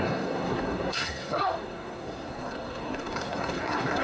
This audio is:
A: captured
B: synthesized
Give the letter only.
B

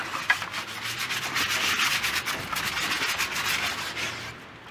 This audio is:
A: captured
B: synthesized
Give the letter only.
A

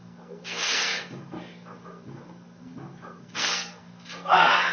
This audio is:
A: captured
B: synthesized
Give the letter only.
B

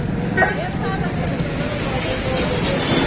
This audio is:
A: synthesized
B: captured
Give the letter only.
B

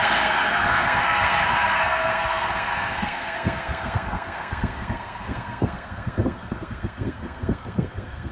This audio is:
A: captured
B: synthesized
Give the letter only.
B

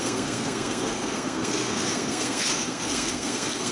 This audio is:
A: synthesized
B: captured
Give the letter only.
A